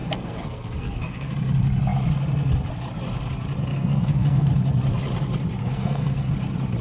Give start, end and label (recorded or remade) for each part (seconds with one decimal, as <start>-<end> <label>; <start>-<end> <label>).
0.0-1.3 remade; 1.3-3.7 recorded; 3.7-4.5 remade; 4.5-5.6 recorded; 5.6-6.3 remade; 6.3-6.8 recorded